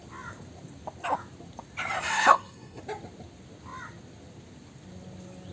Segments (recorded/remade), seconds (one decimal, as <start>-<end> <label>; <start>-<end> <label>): 0.0-2.1 recorded; 2.1-2.8 remade; 2.8-5.5 recorded